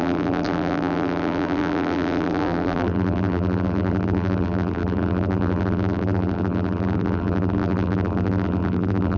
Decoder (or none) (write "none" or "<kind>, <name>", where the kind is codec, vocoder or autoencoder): vocoder, BigVGAN v2